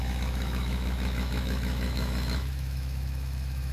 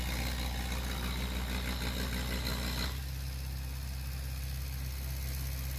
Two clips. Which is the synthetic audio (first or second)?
first